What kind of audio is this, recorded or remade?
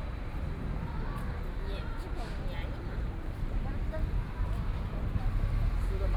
recorded